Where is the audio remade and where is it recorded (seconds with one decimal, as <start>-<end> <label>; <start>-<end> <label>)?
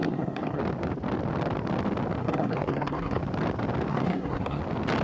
0.0-0.6 remade; 0.6-2.2 recorded; 2.2-3.2 remade; 3.2-3.9 recorded; 3.9-4.6 remade; 4.6-5.0 recorded